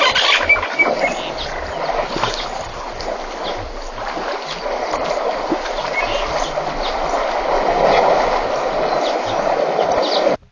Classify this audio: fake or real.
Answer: real